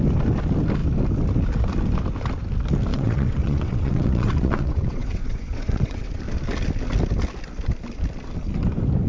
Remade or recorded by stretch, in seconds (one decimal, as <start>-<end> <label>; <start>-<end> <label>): 0.0-2.9 recorded; 2.9-6.2 remade; 6.2-9.1 recorded